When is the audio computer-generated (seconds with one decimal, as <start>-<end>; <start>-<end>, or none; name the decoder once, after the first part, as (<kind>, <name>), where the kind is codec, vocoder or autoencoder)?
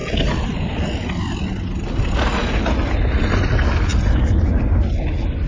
3.9-4.5 (vocoder, BigVGAN v2)